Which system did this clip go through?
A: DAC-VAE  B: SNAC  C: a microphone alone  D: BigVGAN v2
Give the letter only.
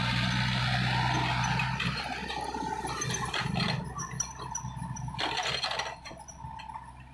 C